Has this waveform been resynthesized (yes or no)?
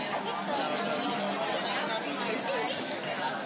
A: no